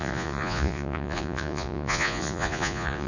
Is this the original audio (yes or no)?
no